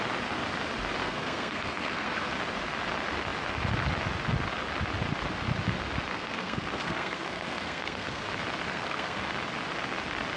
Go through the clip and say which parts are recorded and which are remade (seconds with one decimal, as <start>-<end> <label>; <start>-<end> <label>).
0.0-1.0 recorded; 1.0-2.3 remade; 2.3-6.1 recorded; 6.1-8.2 remade; 8.2-8.7 recorded; 8.7-9.3 remade; 9.3-10.4 recorded